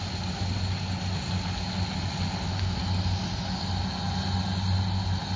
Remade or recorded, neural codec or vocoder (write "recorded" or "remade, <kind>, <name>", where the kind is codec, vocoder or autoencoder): recorded